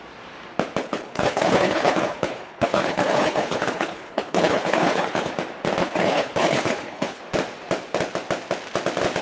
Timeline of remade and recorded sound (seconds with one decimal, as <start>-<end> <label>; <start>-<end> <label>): 0.0-0.8 recorded; 0.8-5.3 remade; 5.3-5.8 recorded; 5.8-7.2 remade; 7.2-9.2 recorded